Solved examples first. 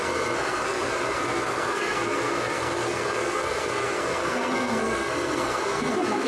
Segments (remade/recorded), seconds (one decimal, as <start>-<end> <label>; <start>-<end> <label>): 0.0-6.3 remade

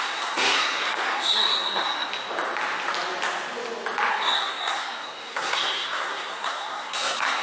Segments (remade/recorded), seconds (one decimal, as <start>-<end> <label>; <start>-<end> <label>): 0.0-2.1 remade; 2.1-4.1 recorded; 4.1-7.4 remade

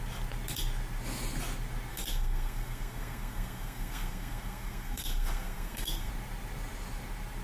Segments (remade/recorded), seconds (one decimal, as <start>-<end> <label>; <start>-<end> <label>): 0.0-1.9 recorded; 1.9-6.1 remade; 6.1-7.4 recorded

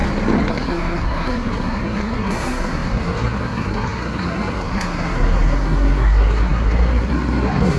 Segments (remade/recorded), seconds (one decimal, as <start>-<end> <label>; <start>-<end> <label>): 0.0-0.5 recorded; 0.5-7.8 remade

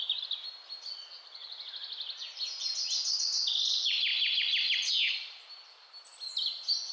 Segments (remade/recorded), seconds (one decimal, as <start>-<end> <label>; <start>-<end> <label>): 0.0-6.9 recorded